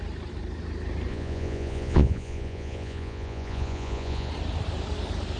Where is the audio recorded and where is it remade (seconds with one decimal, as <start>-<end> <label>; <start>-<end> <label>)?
0.0-1.1 recorded; 1.1-4.3 remade; 4.3-5.4 recorded